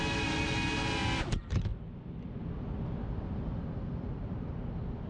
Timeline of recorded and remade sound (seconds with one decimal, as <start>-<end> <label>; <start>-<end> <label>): 0.0-5.1 recorded